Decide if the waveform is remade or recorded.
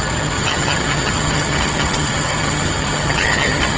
remade